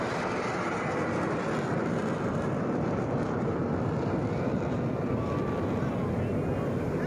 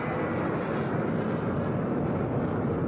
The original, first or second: second